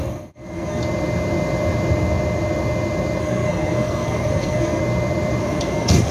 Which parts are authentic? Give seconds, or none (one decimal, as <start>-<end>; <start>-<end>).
0.8-3.2; 4.8-5.4